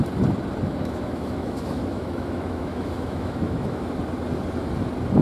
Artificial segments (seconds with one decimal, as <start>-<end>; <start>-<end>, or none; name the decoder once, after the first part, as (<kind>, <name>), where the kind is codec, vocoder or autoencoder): 0.8-3.9 (autoencoder, DAC-VAE)